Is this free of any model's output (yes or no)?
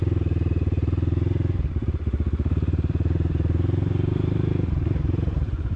no